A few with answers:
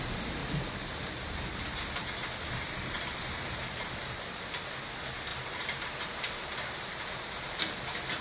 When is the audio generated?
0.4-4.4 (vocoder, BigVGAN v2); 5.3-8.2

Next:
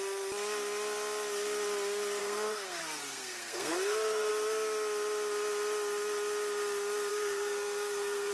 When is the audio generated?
2.2-4.3 (codec, SNAC); 7.1-8.3

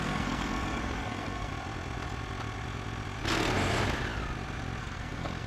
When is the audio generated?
0.0-1.5 (codec, SNAC); 4.8-5.5

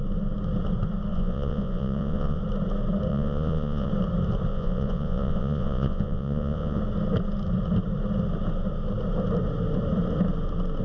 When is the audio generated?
1.1-2.4 (vocoder, Vocos); 3.1-3.9; 4.5-6.8

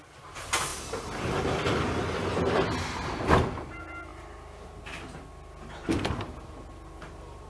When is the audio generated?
none

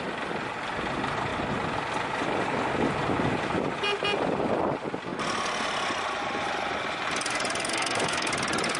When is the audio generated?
7.7-8.3 (codec, SNAC)

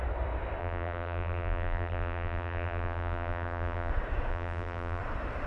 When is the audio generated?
0.6-3.9 (vocoder, BigVGAN v2); 4.3-5.0

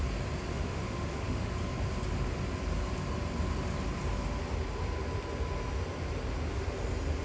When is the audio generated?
0.5-1.5 (autoencoder, DAC-VAE)